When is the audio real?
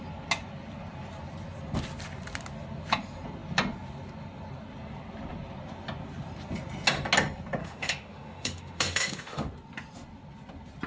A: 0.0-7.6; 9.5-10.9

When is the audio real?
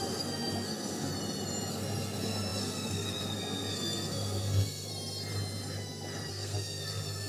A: 1.1-1.7; 4.9-6.3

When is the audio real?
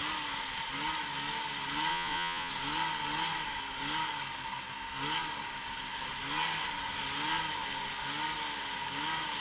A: 0.0-1.9; 2.5-9.4